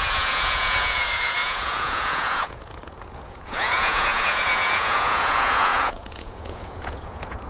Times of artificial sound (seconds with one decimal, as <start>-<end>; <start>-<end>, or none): 0.0-7.5